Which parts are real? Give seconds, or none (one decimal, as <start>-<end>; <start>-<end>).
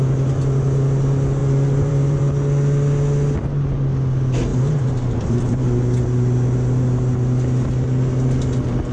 0.0-1.4; 2.2-4.5; 5.4-8.9